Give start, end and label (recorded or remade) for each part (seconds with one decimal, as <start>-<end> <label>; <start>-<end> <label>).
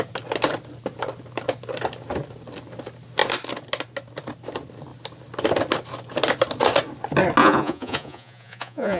0.0-7.4 recorded; 7.4-9.0 remade